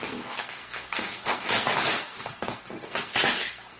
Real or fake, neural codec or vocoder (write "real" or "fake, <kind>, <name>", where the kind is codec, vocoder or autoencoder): fake, codec, SNAC